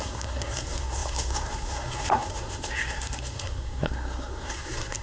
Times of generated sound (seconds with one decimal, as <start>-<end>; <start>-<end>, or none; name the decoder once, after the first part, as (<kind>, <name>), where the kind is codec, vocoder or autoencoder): 0.0-5.0 (codec, SNAC)